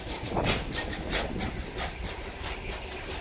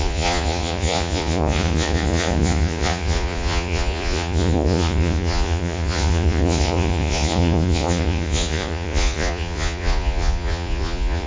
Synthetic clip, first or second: second